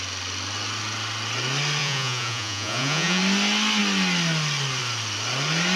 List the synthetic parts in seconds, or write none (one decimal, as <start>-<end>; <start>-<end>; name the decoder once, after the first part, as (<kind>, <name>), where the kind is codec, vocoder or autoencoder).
1.8-3.2 (vocoder, Vocos)